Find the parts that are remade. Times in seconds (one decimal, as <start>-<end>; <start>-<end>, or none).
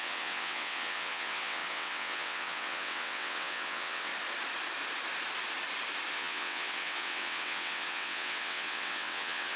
0.0-4.1; 6.1-9.6